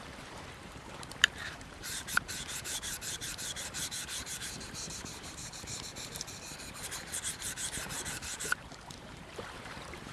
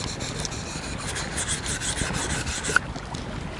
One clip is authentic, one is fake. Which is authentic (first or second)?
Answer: second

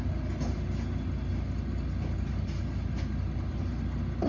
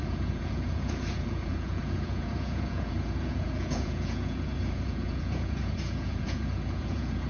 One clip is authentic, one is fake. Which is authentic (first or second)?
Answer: first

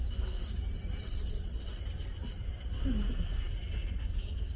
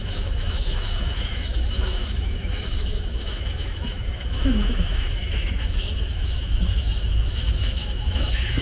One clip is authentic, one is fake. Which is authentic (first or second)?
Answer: first